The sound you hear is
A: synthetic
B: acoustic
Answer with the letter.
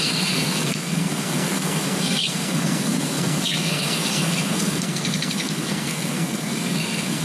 A